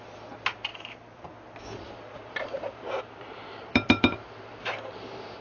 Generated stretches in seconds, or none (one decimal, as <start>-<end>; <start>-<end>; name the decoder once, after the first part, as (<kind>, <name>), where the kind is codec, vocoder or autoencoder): 0.7-1.3 (vocoder, BigVGAN v2); 2.2-5.4